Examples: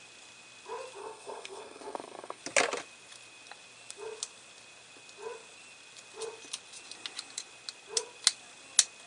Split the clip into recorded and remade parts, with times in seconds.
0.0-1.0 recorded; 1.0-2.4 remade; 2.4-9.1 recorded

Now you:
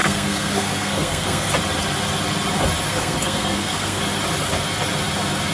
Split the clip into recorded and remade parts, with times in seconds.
0.0-1.5 remade; 1.5-2.9 recorded; 2.9-4.0 remade; 4.0-5.5 recorded